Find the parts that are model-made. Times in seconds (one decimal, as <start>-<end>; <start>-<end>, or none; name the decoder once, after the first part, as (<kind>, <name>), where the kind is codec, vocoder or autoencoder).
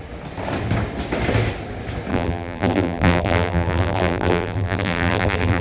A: 2.1-5.6 (vocoder, BigVGAN v2)